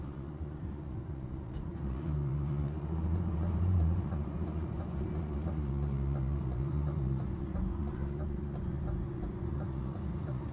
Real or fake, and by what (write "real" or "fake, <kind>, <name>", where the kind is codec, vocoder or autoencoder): fake, vocoder, Vocos